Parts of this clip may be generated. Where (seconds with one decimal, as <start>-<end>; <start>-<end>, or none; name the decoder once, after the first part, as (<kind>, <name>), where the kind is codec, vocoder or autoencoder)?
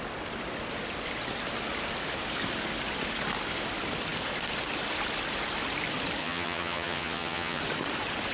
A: 6.2-7.6 (vocoder, HiFi-GAN)